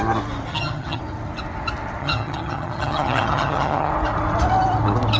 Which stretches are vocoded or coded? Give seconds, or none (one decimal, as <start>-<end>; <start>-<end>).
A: 0.5-1.0; 2.0-3.9